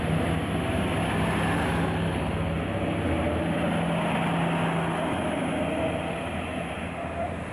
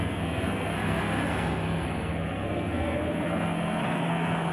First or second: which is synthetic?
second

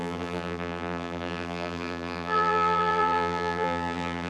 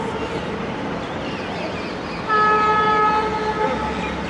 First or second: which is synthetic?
first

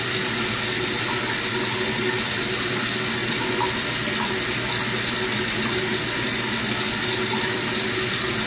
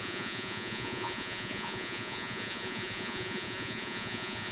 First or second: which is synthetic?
second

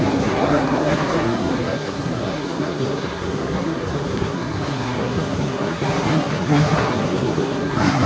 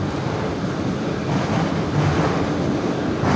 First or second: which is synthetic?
first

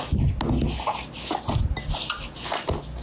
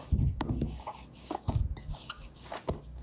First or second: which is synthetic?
second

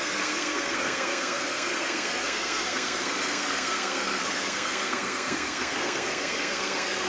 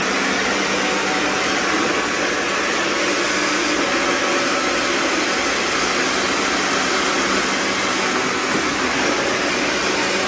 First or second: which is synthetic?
first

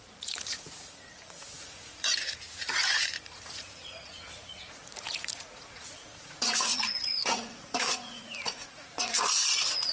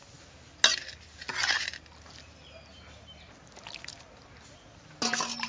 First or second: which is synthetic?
first